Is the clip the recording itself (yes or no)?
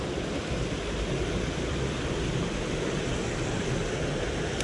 yes